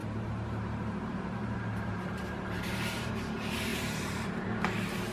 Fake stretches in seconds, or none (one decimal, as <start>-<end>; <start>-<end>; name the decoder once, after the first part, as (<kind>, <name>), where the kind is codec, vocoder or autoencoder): 0.0-3.1 (vocoder, BigVGAN v2); 3.7-4.6